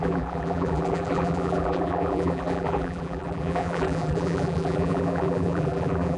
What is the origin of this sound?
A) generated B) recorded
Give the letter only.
A